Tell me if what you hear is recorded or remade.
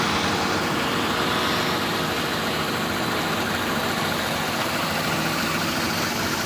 remade